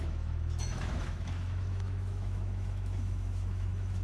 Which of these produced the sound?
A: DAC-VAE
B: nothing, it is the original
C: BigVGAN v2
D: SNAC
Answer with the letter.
A